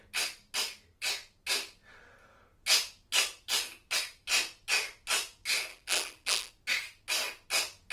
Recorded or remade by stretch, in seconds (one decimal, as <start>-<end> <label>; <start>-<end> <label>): 0.0-5.7 recorded; 5.7-6.5 remade; 6.5-7.9 recorded